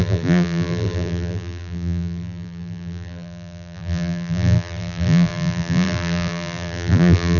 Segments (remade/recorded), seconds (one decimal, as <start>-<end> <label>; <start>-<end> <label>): 0.0-7.4 remade